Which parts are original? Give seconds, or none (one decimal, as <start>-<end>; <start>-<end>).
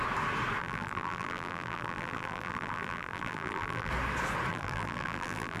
0.0-0.6; 3.9-4.5